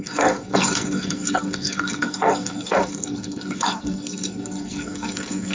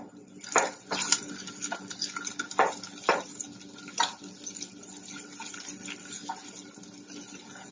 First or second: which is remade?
first